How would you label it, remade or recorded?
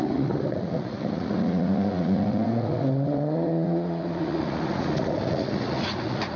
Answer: remade